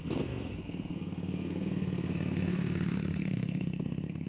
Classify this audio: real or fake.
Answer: fake